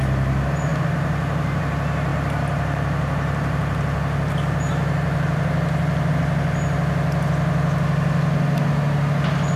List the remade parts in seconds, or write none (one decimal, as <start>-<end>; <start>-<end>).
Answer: 0.7-1.6; 2.1-6.1